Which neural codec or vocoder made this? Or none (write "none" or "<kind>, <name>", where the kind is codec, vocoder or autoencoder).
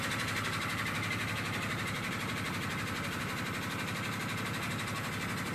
none